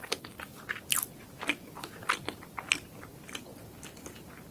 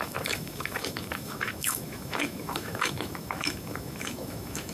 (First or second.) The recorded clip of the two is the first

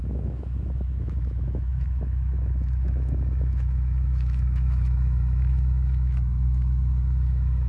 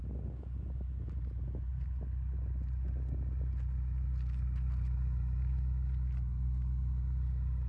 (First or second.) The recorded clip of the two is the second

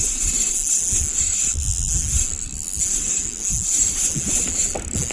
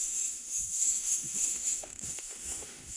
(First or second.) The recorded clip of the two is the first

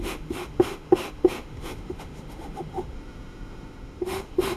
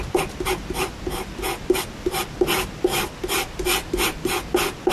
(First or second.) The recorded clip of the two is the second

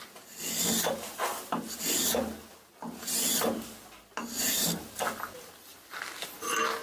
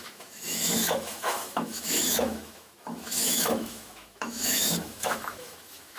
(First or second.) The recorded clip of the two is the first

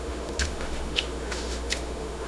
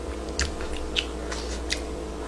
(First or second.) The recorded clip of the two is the second